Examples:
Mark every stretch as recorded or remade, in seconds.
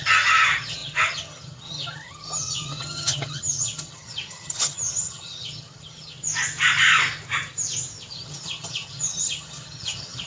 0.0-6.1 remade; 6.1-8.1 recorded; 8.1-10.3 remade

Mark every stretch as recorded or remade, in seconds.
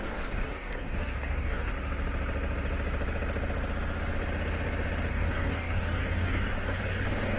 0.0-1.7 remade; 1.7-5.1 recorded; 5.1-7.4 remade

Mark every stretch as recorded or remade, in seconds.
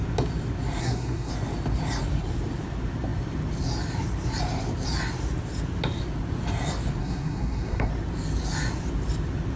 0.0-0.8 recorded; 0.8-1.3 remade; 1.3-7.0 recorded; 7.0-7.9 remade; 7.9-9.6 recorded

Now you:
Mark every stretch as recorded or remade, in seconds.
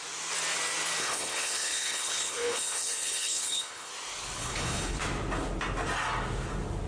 0.0-1.0 recorded; 1.0-3.9 remade; 3.9-4.4 recorded; 4.4-5.0 remade; 5.0-6.9 recorded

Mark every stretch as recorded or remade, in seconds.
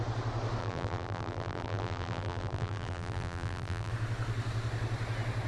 0.0-0.6 recorded; 0.6-3.9 remade; 3.9-5.5 recorded